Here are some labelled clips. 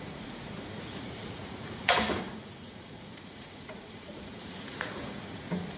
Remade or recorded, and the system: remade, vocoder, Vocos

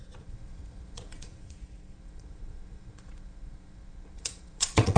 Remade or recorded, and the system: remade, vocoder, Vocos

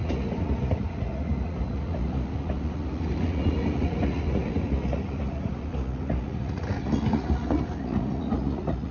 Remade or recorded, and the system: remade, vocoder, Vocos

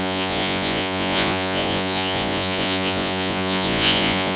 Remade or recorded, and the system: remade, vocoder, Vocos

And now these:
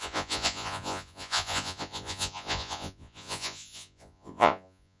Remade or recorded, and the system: remade, vocoder, Vocos